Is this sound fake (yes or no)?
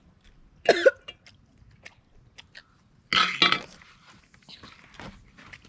no